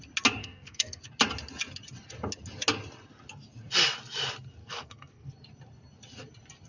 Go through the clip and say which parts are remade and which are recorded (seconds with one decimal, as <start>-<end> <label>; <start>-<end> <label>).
0.0-0.4 recorded; 0.4-1.0 remade; 1.0-4.6 recorded; 4.6-5.3 remade; 5.3-6.7 recorded